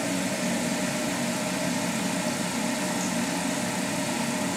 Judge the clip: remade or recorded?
recorded